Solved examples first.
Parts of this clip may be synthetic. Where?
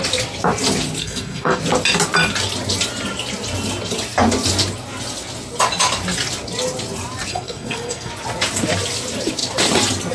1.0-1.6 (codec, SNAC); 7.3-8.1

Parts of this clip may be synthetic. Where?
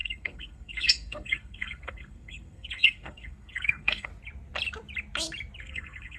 0.0-4.1 (codec, SNAC); 5.6-6.2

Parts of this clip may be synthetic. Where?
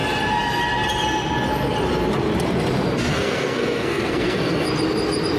3.1-4.7 (codec, SNAC)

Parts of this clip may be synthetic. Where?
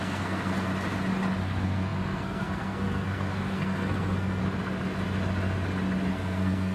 0.0-0.7 (codec, SNAC); 1.4-4.4; 6.1-6.7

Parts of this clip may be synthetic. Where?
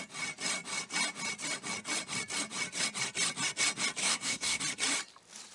4.0-4.6 (codec, SNAC)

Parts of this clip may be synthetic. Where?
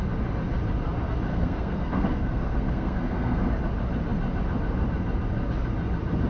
1.3-3.5 (codec, SNAC)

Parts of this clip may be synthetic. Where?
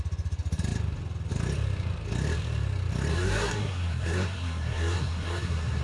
3.1-5.8 (codec, SNAC)